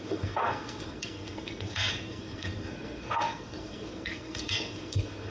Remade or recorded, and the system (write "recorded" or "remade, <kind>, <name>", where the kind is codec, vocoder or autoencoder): remade, codec, SNAC